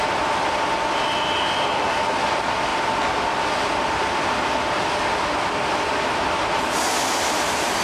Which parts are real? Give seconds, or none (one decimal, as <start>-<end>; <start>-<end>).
0.0-7.8